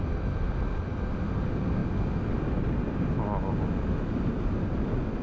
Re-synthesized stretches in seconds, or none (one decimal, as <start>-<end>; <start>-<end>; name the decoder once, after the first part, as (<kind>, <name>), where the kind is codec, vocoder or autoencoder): none